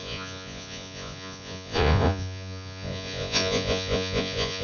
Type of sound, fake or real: fake